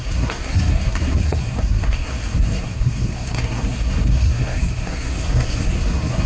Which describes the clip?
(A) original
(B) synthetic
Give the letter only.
B